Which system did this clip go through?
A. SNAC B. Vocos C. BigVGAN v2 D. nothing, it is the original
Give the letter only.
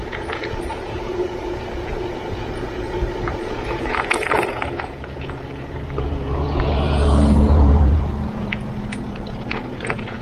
B